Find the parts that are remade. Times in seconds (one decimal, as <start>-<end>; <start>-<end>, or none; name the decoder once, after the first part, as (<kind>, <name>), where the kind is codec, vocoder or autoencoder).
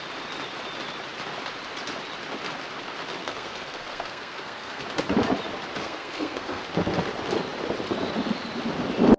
3.2-4.8 (codec, SNAC); 5.8-6.6